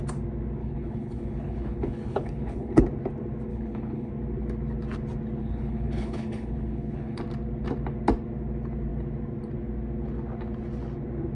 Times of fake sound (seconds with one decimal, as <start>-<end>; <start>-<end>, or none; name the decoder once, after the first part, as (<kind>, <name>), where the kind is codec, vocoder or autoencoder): 0.6-2.8 (codec, HILCodec); 3.5-4.1; 5.4-7.2